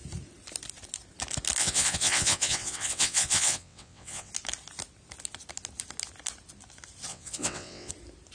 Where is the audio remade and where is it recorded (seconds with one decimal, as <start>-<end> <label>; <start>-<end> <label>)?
0.0-1.6 recorded; 1.6-4.3 remade; 4.3-7.1 recorded; 7.1-7.9 remade; 7.9-8.3 recorded